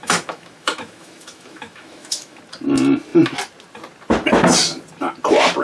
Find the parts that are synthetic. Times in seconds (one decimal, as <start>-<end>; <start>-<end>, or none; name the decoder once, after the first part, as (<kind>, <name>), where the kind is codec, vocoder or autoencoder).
0.0-2.4 (autoencoder, DAC-VAE)